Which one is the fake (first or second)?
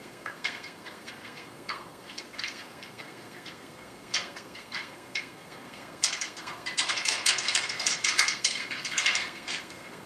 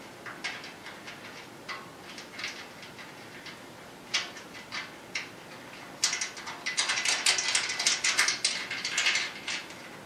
first